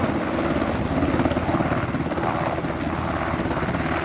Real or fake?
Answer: real